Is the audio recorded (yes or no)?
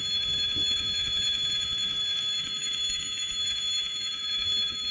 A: no